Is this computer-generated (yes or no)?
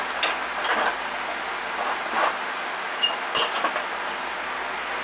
no